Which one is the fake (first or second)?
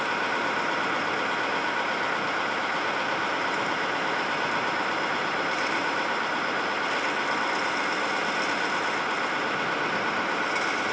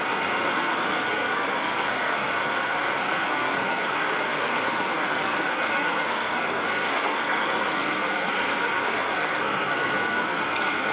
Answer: second